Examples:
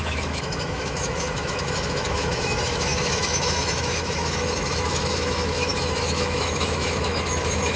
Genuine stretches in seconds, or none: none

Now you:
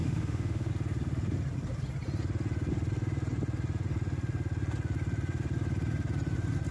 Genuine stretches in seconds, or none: 0.7-6.7

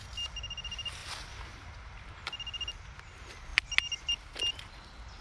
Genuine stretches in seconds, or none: 0.0-5.2

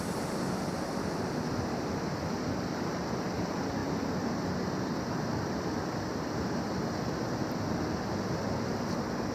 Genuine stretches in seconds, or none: 0.0-9.3

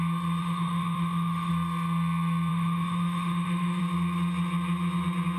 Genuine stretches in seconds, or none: 0.0-0.4; 1.5-2.5; 3.8-5.4

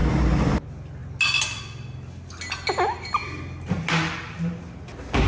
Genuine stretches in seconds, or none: 0.0-5.3

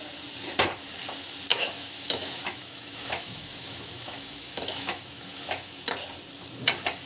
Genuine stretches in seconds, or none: 0.0-1.5; 5.8-7.1